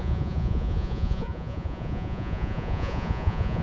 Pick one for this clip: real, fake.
fake